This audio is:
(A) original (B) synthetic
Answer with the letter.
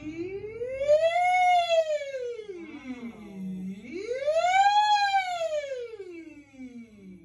A